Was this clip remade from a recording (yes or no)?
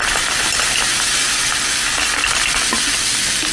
no